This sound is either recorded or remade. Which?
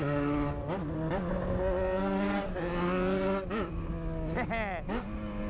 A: recorded